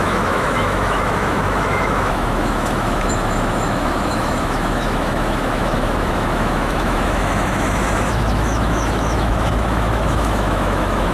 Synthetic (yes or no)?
yes